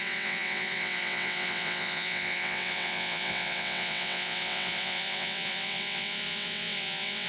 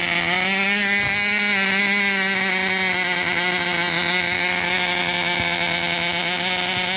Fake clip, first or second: first